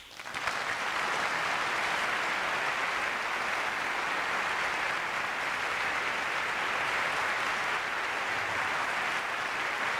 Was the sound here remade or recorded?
recorded